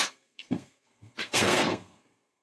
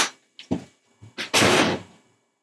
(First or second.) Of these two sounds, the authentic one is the second